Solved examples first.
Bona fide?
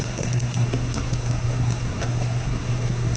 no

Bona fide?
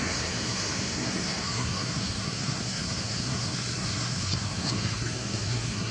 no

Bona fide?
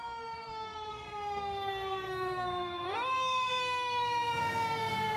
no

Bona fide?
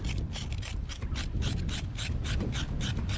yes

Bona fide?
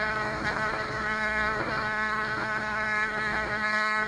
no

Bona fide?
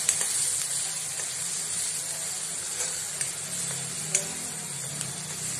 yes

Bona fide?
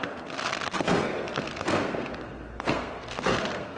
no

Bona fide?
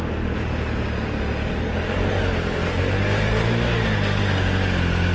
yes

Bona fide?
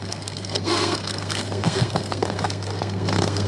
no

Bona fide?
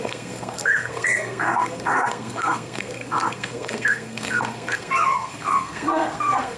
no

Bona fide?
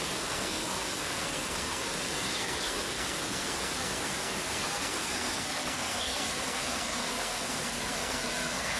no